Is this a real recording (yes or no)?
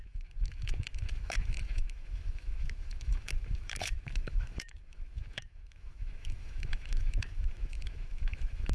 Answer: no